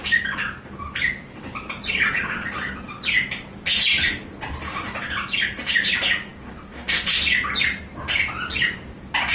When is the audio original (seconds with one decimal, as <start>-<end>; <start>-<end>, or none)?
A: none